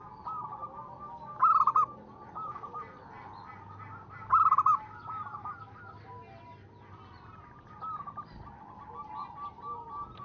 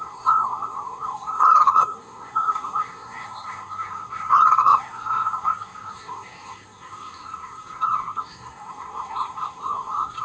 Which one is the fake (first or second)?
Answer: second